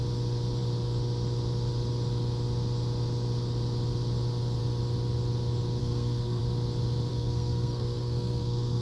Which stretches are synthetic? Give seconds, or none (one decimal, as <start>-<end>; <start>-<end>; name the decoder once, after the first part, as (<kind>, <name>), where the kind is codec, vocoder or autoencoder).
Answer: 5.8-6.4 (codec, SNAC); 7.1-8.8